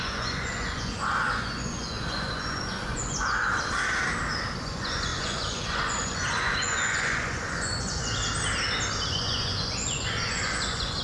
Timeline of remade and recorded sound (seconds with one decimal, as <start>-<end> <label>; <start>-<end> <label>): 0.0-3.5 remade; 3.5-4.6 recorded; 4.6-8.2 remade; 8.2-9.1 recorded; 9.1-11.0 remade